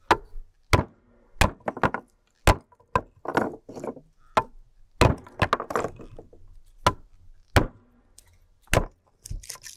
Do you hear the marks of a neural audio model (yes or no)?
no